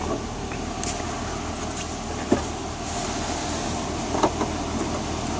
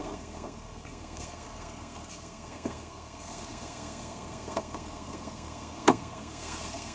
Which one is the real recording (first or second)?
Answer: first